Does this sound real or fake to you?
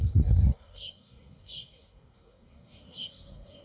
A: fake